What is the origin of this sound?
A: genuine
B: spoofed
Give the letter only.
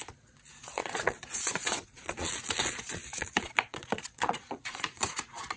B